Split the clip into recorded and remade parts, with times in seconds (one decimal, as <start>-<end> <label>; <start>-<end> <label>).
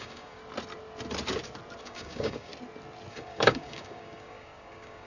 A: 0.0-0.4 remade; 0.4-1.8 recorded; 1.8-2.5 remade; 2.5-3.1 recorded; 3.1-5.1 remade